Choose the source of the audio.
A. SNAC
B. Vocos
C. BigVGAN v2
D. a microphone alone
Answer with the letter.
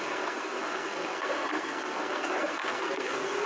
A